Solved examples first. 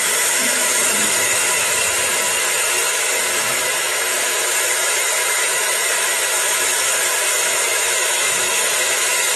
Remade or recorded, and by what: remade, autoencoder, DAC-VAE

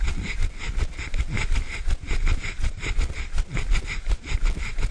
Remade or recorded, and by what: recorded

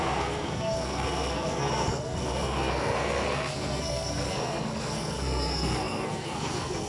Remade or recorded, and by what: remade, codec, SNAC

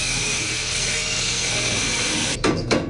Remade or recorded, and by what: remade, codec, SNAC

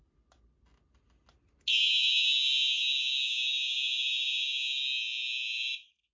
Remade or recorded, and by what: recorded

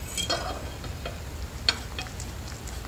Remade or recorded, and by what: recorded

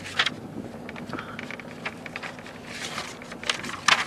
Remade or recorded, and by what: recorded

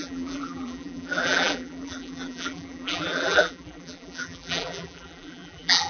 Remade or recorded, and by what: remade, vocoder, BigVGAN v2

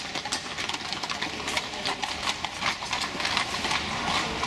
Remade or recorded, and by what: recorded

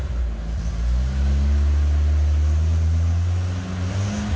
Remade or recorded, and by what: recorded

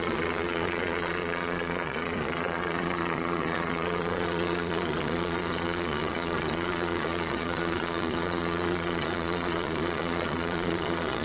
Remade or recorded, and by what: remade, vocoder, Vocos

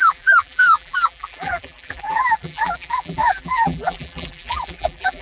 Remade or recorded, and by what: remade, vocoder, BigVGAN v2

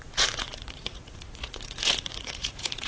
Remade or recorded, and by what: remade, vocoder, Vocos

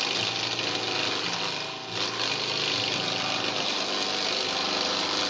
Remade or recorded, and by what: recorded